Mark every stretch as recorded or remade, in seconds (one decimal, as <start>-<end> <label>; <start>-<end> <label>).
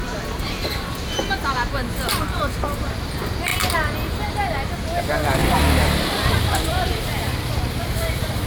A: 0.0-3.5 remade; 3.5-5.0 recorded; 5.0-5.4 remade; 5.4-6.3 recorded; 6.3-8.5 remade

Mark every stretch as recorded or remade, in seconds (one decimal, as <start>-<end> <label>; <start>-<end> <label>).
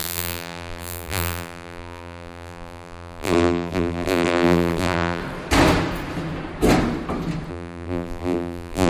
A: 0.0-5.2 remade; 5.2-7.5 recorded; 7.5-8.9 remade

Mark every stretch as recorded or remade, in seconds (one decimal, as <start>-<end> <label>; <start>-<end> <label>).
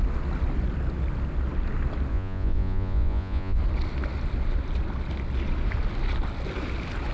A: 0.0-2.1 recorded; 2.1-3.6 remade; 3.6-7.1 recorded